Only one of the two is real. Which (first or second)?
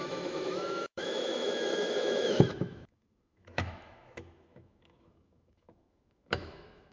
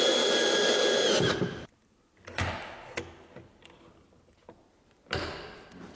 second